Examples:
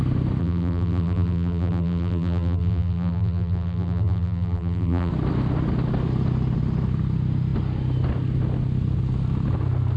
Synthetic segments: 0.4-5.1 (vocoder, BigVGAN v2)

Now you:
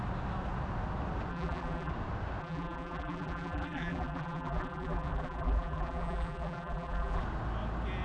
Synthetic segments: 1.3-1.9 (vocoder, BigVGAN v2); 2.4-7.2

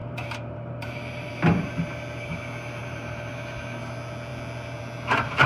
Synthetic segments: 0.0-1.3 (vocoder, BigVGAN v2); 2.8-3.3